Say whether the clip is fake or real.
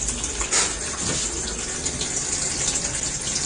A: real